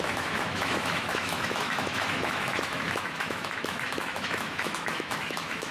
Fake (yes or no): yes